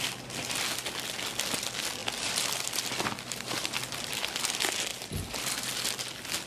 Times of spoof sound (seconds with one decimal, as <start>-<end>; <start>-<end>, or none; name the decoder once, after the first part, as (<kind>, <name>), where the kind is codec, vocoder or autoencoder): 2.0-3.0 (vocoder, BigVGAN v2)

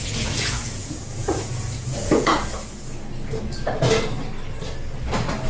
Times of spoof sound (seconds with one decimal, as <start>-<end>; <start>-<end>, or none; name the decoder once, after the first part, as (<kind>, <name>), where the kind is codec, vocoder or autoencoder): 0.0-2.3 (vocoder, Vocos)

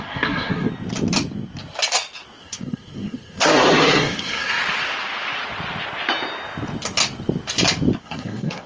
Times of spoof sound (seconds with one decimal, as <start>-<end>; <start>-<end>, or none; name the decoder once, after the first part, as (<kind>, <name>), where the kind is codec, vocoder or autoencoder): 0.0-0.7 (codec, SNAC); 2.4-4.6; 8.0-8.7